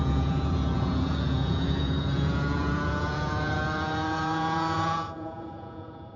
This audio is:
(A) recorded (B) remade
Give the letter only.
B